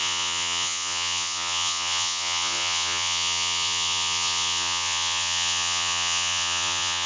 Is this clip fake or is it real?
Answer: fake